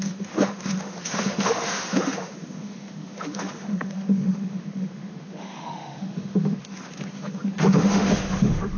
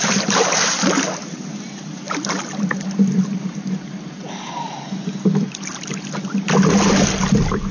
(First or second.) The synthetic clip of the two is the first